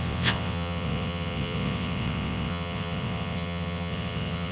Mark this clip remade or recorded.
remade